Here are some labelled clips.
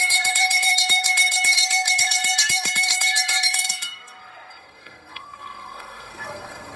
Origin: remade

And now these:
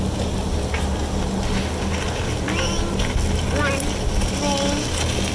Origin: recorded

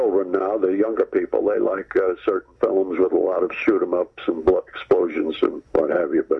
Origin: recorded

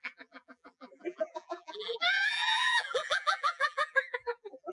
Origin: remade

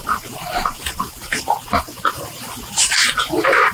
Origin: remade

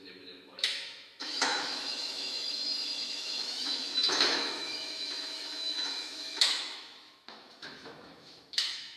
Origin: remade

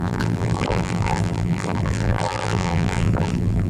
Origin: remade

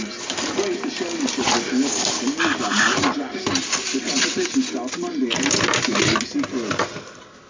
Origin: recorded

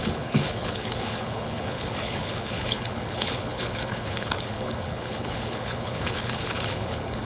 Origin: remade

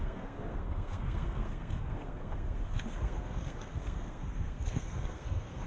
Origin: remade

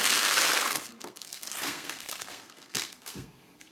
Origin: remade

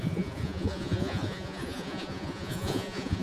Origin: remade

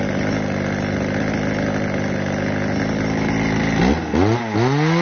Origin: recorded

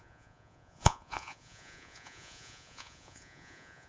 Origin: remade